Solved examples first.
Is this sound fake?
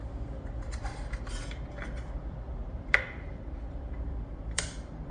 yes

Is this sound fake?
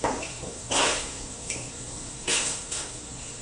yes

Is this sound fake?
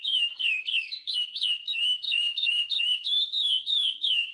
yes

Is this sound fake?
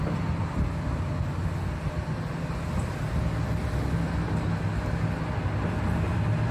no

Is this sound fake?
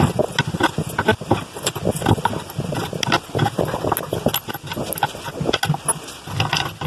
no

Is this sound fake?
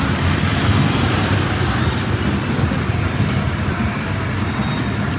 no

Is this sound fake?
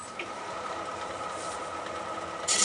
no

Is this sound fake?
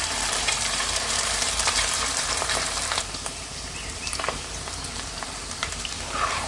yes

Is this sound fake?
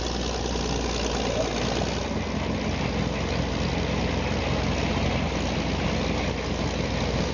no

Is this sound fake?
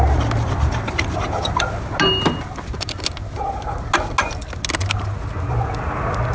no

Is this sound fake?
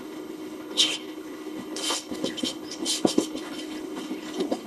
yes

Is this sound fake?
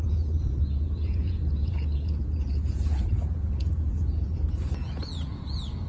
yes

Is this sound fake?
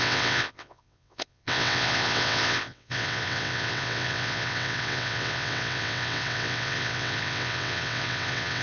yes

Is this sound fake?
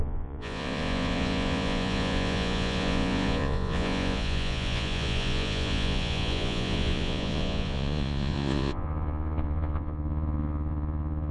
yes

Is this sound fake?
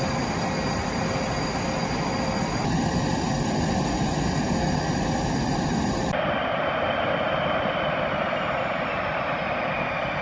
no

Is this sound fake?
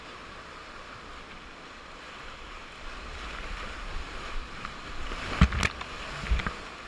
no